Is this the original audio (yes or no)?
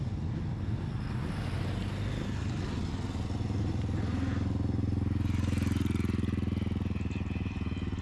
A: yes